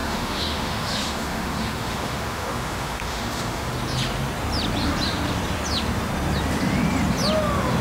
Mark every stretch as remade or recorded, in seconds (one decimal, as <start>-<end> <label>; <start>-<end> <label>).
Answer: 0.0-3.7 remade; 3.7-7.8 recorded